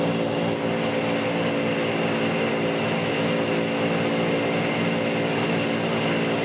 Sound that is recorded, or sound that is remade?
recorded